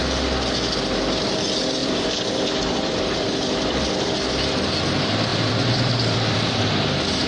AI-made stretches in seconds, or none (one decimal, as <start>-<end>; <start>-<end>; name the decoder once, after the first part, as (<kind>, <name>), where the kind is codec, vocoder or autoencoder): 1.8-4.4 (vocoder, BigVGAN v2); 5.3-6.7